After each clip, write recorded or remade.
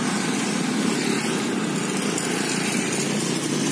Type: recorded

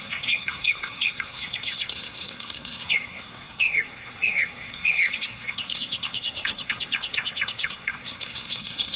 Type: remade